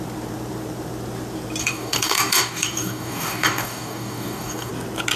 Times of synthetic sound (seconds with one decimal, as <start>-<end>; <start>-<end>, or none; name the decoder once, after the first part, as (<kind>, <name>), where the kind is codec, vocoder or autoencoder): 1.6-4.7 (codec, DAC)